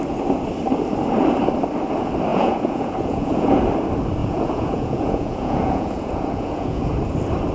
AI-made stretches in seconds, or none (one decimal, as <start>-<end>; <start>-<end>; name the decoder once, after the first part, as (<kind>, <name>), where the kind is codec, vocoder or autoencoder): 2.3-3.7 (vocoder, Vocos); 4.2-6.9